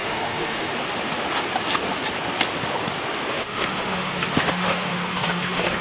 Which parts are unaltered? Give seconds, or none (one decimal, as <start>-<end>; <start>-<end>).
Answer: 0.7-3.4